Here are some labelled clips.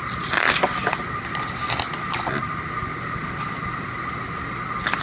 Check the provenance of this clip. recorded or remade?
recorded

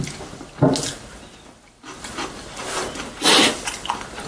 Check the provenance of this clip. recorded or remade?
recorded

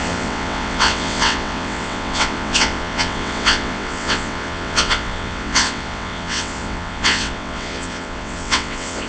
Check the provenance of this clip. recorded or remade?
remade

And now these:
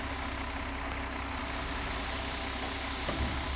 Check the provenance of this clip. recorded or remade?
recorded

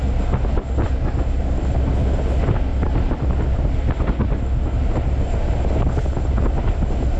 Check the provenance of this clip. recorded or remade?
recorded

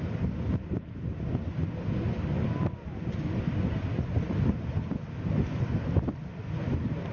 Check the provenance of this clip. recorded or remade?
recorded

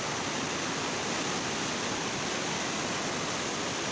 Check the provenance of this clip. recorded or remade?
recorded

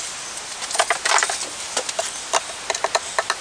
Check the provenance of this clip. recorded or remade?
recorded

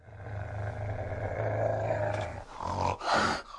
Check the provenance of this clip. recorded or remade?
recorded